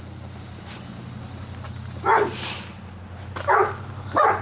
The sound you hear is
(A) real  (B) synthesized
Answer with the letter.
A